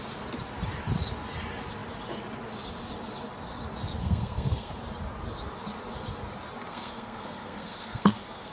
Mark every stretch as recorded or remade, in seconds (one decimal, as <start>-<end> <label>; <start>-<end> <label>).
0.0-4.0 recorded; 4.0-4.8 remade; 4.8-6.7 recorded; 6.7-8.5 remade